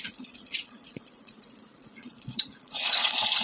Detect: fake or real fake